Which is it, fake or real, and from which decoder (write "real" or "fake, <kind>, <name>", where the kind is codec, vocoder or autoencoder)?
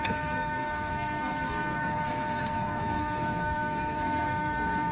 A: fake, codec, SNAC